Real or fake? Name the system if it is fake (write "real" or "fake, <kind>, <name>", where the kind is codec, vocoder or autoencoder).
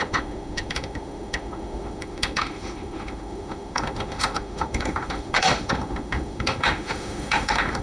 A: fake, autoencoder, DAC-VAE